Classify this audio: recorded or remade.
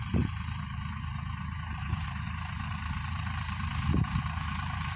remade